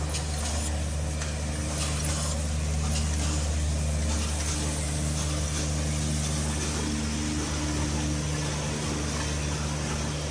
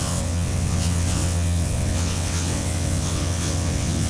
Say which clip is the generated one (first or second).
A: second